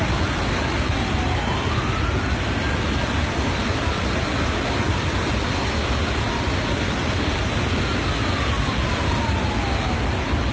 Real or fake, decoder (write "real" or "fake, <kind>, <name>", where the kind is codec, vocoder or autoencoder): real